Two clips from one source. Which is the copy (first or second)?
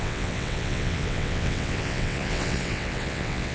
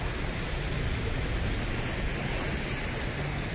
first